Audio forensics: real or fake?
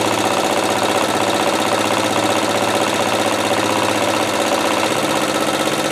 real